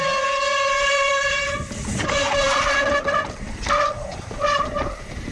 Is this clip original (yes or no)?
no